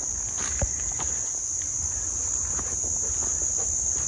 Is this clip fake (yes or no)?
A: no